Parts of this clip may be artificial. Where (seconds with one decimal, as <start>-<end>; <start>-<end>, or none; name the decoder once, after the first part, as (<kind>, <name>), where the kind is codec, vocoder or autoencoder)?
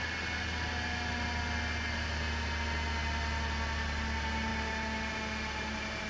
none